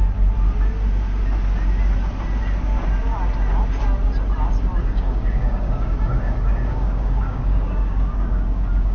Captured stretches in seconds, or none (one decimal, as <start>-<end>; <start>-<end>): 0.0-4.8